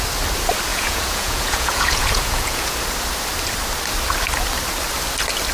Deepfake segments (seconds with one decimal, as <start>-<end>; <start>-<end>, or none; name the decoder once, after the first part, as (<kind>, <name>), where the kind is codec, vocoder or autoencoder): 0.7-2.7 (vocoder, Vocos)